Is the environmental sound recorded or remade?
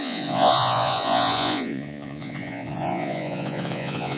remade